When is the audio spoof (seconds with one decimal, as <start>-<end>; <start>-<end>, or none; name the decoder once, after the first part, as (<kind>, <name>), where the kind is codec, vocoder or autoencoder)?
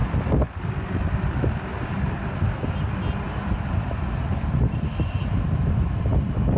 0.0-1.0 (vocoder, BigVGAN v2); 1.7-5.7